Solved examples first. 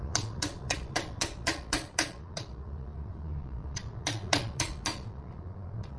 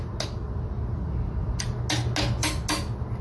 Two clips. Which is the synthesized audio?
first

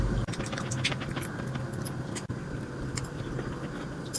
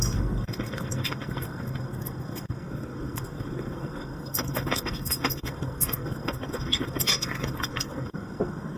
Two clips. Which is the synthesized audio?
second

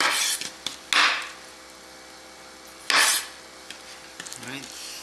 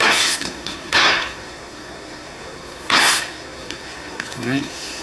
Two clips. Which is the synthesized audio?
second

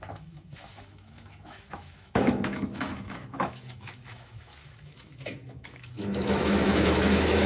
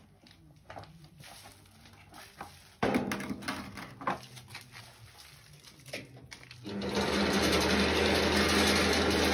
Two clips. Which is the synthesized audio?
first